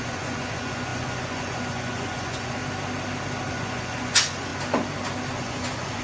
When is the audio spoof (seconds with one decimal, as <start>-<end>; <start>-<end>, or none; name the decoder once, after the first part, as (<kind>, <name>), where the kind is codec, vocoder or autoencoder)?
0.0-2.6 (vocoder, Vocos); 3.5-4.5; 5.3-6.0